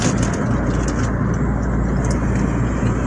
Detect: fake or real real